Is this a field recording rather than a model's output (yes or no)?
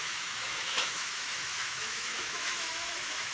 no